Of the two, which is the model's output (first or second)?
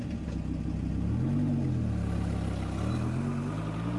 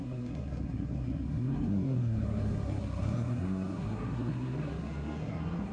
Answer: second